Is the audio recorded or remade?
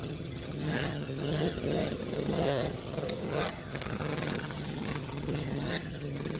remade